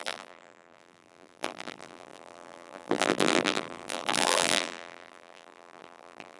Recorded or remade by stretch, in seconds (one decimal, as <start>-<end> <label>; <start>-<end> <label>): 0.0-6.4 remade